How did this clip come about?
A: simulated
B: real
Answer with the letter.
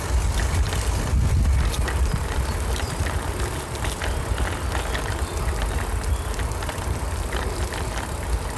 B